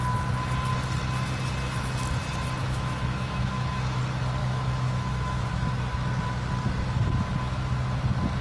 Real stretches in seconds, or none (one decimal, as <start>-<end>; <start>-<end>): 0.0-2.6; 4.0-4.4; 5.5-8.4